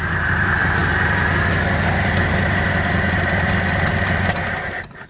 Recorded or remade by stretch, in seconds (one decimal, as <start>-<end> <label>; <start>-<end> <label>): 0.0-5.1 recorded